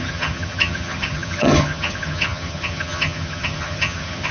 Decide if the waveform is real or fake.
fake